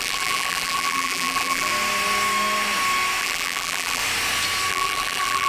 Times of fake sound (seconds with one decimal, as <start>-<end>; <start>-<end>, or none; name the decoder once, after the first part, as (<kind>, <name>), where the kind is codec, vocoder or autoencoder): 0.0-1.7 (vocoder, BigVGAN v2); 3.2-4.0; 4.7-5.5